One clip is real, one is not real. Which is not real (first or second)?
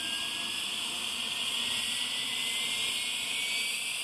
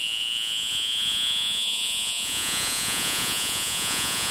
second